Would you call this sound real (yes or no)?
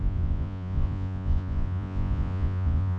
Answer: no